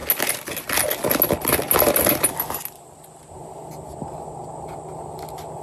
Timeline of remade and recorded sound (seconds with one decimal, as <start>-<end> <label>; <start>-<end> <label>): 0.0-5.6 recorded